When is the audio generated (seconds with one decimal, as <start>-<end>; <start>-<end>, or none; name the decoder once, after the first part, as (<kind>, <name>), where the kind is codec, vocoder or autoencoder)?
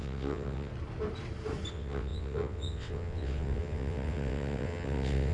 0.0-0.7 (vocoder, WaveNeXt); 1.7-5.3